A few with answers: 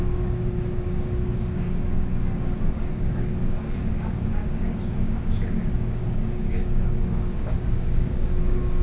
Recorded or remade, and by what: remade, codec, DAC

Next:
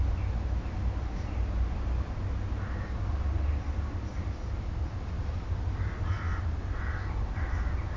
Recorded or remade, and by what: recorded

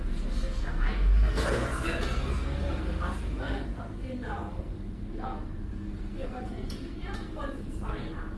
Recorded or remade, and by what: remade, codec, SNAC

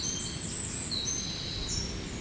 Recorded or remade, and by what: recorded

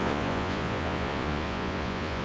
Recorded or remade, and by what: remade, vocoder, Vocos